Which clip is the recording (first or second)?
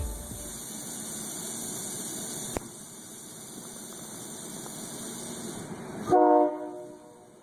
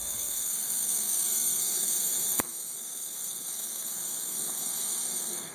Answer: first